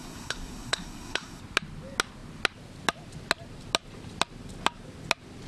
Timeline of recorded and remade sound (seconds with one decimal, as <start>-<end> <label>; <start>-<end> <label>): 0.0-1.4 remade; 1.4-5.5 recorded